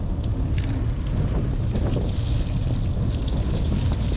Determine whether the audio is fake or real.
real